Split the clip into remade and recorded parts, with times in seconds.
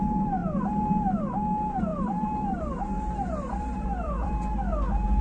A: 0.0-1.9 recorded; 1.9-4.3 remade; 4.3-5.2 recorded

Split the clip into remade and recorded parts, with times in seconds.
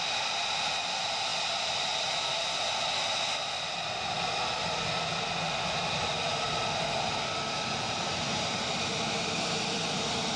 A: 0.0-10.4 recorded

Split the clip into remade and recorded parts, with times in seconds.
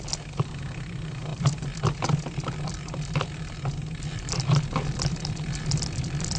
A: 0.0-6.4 remade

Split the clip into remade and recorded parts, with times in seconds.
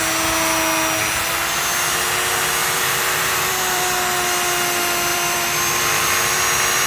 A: 0.0-2.6 recorded; 2.6-3.8 remade; 3.8-5.1 recorded; 5.1-6.9 remade